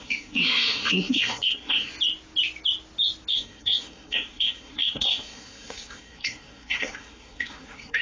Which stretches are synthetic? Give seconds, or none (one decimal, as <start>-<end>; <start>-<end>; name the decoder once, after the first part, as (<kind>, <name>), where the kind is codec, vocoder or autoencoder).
0.0-1.9 (codec, SNAC); 3.3-8.0